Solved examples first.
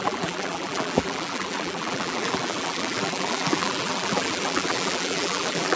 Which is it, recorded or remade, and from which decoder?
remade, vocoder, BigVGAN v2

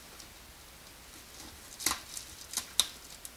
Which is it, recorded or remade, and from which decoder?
recorded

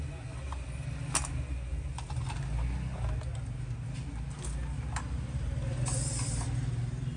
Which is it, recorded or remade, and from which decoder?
recorded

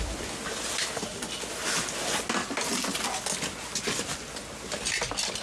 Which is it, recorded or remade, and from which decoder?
recorded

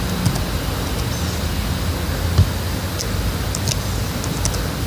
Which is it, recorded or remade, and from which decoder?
recorded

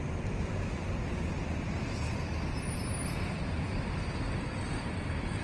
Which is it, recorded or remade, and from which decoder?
recorded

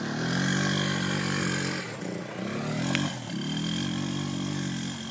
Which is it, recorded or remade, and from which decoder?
recorded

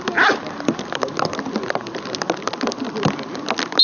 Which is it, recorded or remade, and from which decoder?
recorded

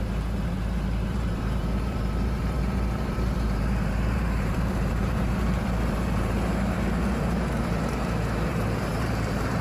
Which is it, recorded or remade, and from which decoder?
remade, vocoder, BigVGAN v2